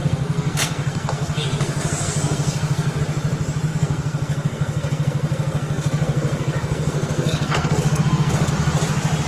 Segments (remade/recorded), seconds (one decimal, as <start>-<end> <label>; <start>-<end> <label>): 0.0-3.0 remade; 3.0-3.7 recorded; 3.7-8.5 remade; 8.5-9.3 recorded